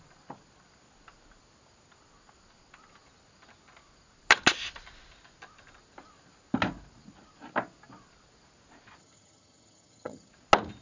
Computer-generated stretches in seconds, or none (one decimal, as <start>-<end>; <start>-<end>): 9.0-10.3